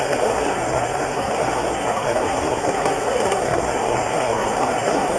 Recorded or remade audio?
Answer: remade